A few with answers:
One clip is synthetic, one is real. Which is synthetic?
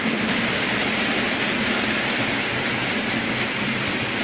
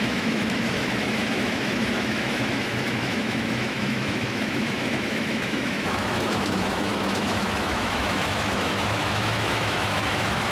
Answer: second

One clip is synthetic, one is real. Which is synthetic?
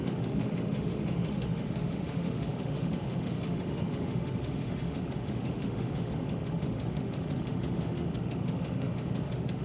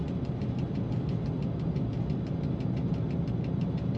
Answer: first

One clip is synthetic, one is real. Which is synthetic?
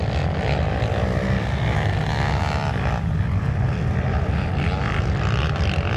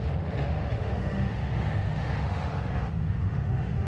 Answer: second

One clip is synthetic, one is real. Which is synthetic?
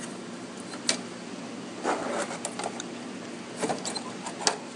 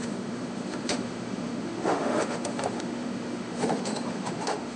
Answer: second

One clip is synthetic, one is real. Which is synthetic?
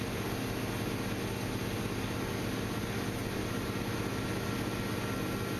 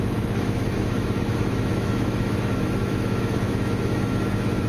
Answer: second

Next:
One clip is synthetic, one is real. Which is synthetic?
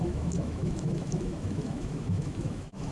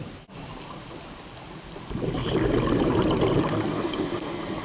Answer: first